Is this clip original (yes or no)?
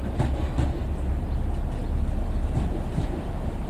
yes